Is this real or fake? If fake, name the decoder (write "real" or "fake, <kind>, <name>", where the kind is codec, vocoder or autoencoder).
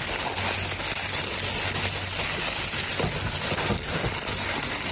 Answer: real